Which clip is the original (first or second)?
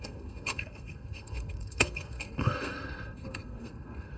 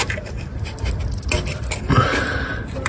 second